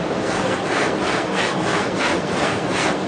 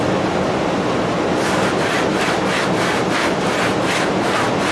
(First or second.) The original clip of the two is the second